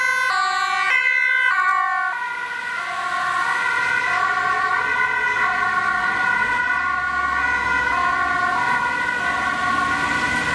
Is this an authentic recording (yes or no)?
yes